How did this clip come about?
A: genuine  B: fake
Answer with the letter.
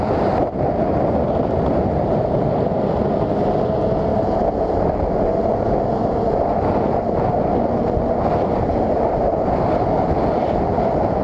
A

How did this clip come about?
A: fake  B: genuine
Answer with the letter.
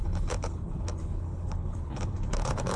A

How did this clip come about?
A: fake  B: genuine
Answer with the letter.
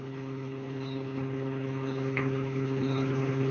A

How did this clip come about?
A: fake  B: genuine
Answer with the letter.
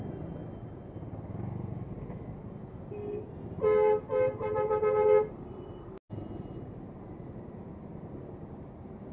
B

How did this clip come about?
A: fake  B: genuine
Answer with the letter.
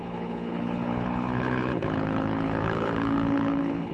A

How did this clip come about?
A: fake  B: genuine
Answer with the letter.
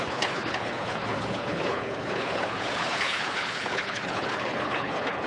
A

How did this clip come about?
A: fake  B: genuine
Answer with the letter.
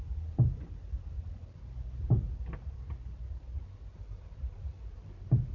B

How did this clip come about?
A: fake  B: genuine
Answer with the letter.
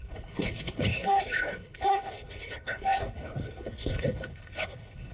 A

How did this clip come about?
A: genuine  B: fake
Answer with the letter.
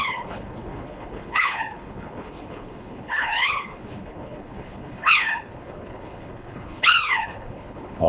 B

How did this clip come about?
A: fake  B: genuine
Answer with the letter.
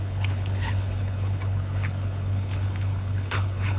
A